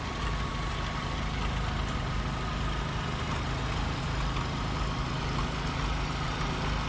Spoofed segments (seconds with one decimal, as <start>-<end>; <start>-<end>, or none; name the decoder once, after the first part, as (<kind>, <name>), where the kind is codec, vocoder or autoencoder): none

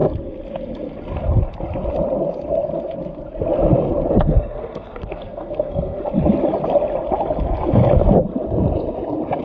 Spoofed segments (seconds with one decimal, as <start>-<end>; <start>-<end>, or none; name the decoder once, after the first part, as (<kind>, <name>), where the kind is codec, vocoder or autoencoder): 4.2-6.0 (codec, SNAC)

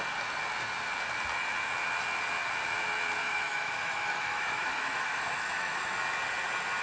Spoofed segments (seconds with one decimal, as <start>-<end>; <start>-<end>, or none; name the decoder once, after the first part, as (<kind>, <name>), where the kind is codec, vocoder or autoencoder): 3.2-6.0 (autoencoder, DAC-VAE)

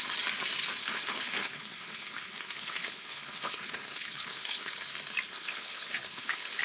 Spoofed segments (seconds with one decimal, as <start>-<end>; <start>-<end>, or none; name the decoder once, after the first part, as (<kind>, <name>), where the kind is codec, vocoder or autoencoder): 0.8-4.8 (codec, HILCodec); 5.3-6.6

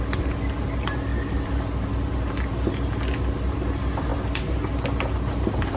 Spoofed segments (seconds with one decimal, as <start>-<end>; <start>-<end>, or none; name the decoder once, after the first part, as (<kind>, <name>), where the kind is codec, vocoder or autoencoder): 0.0-1.1 (vocoder, BigVGAN v2); 3.3-5.8